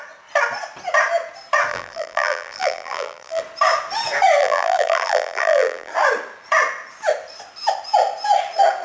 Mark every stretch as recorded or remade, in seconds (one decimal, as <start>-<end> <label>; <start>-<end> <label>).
0.0-1.7 recorded; 1.7-3.4 remade; 3.4-4.4 recorded; 4.4-5.9 remade; 5.9-8.8 recorded